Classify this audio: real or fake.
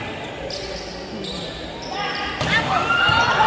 real